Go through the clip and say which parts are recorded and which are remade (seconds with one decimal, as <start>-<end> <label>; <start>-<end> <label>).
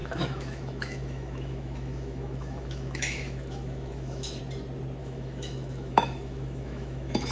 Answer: 0.0-4.4 remade; 4.4-5.0 recorded; 5.0-7.3 remade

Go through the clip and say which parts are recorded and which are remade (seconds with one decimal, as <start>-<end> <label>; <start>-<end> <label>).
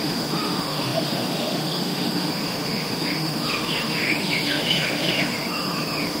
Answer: 0.0-6.2 remade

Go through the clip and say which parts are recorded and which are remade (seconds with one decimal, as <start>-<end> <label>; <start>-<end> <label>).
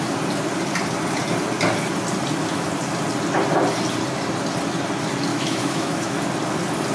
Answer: 0.0-5.3 recorded; 5.3-6.2 remade; 6.2-6.9 recorded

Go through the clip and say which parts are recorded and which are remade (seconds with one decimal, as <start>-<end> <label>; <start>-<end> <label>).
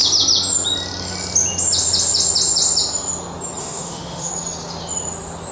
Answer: 0.0-3.6 recorded; 3.6-4.3 remade; 4.3-5.5 recorded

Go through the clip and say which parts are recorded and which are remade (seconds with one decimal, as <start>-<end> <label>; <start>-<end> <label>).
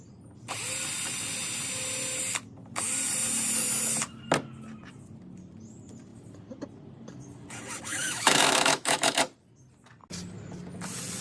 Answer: 0.0-7.9 recorded; 7.9-9.2 remade; 9.2-11.2 recorded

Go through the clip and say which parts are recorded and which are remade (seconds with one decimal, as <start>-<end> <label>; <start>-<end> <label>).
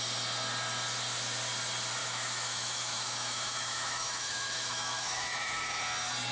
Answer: 0.0-2.0 recorded; 2.0-5.8 remade; 5.8-6.3 recorded